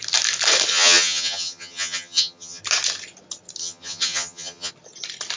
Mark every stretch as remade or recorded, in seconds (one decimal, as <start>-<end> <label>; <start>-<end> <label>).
0.0-0.7 recorded; 0.7-2.6 remade; 2.6-3.6 recorded; 3.6-4.7 remade; 4.7-5.4 recorded